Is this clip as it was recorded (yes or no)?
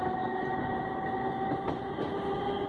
yes